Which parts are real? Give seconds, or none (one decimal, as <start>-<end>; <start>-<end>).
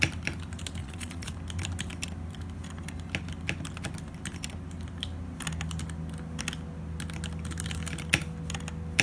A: 0.0-0.8; 1.3-9.0